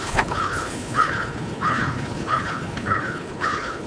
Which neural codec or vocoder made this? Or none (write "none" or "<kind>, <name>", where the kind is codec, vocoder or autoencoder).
codec, HILCodec